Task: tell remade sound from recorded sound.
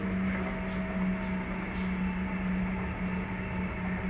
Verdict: recorded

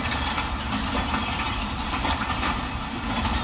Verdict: remade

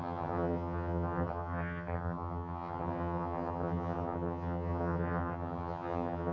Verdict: remade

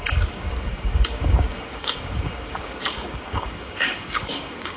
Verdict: remade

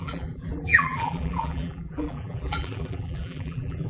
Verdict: remade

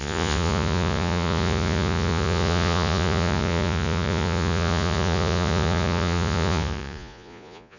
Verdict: remade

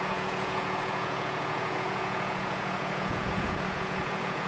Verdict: remade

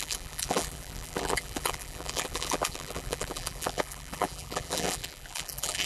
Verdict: remade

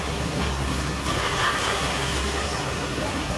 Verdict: remade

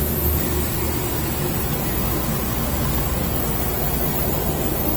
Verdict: recorded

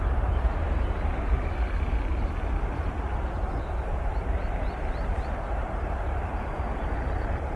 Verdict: remade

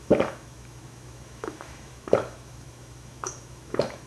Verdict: remade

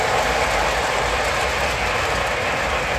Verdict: recorded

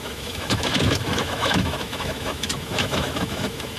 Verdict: remade